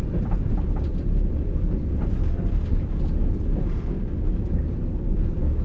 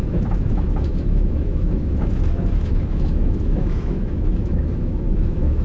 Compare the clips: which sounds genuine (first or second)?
first